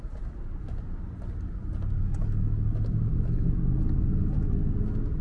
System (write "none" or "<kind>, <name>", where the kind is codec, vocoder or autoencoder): none